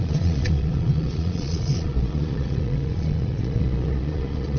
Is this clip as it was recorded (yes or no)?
no